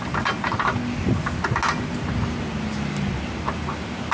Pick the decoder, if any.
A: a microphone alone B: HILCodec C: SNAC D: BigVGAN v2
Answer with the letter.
A